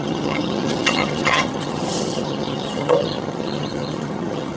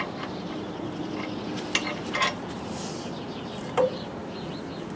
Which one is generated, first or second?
first